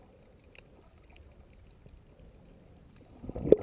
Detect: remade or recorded recorded